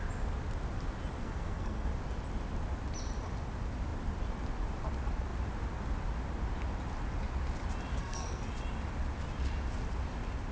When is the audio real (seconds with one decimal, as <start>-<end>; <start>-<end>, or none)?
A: 0.0-1.2; 1.9-7.9; 8.4-10.5